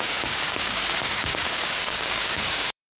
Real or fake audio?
fake